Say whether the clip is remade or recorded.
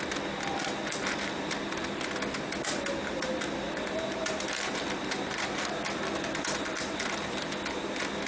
recorded